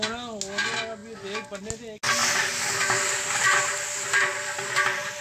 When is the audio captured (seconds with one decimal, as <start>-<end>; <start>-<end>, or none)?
0.0-5.2